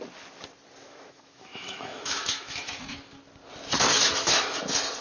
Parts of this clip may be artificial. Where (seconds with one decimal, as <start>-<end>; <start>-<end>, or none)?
0.8-3.0; 3.9-4.6